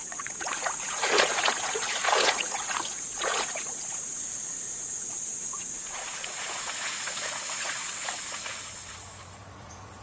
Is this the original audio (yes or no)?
no